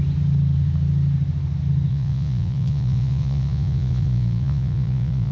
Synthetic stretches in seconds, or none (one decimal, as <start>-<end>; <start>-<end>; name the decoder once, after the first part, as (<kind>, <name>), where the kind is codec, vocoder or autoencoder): 1.9-5.3 (vocoder, Vocos)